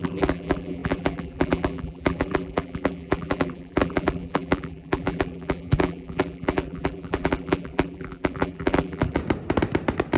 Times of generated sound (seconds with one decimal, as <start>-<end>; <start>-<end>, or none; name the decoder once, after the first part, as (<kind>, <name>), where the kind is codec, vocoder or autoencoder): 0.0-9.2 (vocoder, BigVGAN v2)

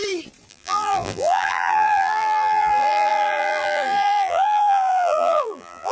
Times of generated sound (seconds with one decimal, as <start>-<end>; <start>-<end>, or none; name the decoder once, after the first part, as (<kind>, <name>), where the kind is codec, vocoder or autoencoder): 0.5-5.9 (vocoder, BigVGAN v2)

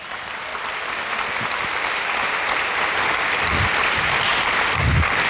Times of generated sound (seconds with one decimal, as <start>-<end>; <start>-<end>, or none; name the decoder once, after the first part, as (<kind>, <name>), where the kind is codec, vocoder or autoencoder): none